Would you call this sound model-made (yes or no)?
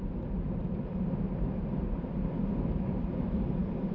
no